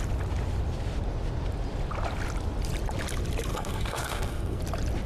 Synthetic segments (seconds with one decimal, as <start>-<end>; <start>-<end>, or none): 3.5-4.6